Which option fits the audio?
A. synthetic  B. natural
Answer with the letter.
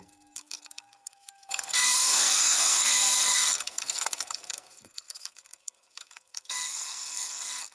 A